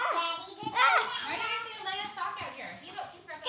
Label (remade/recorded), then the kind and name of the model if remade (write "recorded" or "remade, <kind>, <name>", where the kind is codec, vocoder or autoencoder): recorded